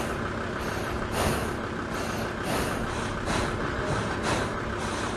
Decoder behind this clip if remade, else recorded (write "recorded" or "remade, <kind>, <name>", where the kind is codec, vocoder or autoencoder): recorded